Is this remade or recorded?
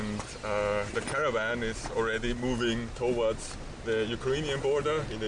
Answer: recorded